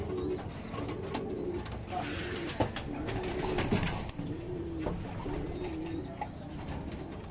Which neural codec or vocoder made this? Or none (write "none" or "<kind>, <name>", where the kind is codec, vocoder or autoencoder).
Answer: none